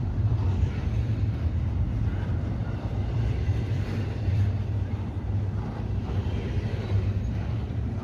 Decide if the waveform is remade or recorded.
remade